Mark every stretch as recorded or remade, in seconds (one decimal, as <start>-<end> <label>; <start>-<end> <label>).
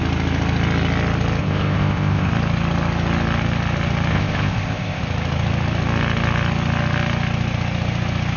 0.0-1.4 recorded; 1.4-2.3 remade; 2.3-4.1 recorded; 4.1-5.0 remade; 5.0-8.4 recorded